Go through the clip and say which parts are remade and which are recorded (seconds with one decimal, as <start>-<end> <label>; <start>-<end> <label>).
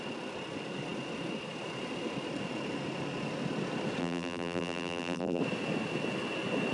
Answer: 0.0-4.0 recorded; 4.0-5.4 remade; 5.4-6.7 recorded